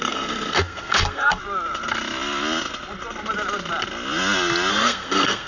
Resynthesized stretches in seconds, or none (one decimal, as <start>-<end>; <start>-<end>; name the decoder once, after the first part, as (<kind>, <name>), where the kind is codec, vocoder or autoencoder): 0.0-1.4 (codec, SNAC); 4.7-5.5